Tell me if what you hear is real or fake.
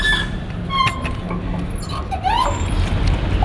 real